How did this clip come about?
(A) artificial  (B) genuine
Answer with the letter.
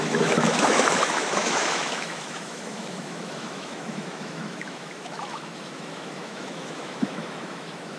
A